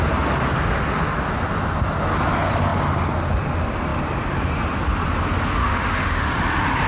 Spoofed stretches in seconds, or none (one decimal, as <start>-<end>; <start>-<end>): 5.6-6.3